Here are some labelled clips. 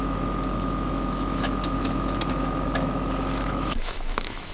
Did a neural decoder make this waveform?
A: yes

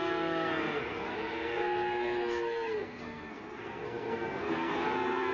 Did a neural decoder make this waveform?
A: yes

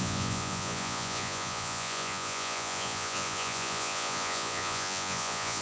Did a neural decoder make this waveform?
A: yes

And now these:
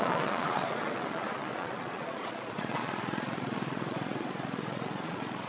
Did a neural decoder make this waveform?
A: yes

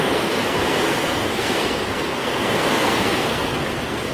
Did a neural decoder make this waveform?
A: yes